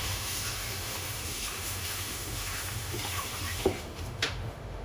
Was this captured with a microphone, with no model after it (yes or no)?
no